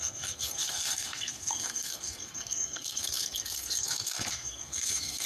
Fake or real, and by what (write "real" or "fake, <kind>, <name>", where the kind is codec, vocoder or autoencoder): fake, codec, SNAC